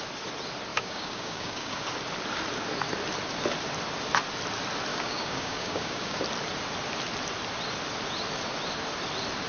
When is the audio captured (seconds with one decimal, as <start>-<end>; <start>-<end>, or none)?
0.0-0.7; 1.8-4.9; 6.2-9.5